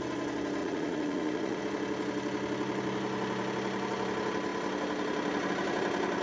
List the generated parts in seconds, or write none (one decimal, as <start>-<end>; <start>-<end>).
0.6-1.6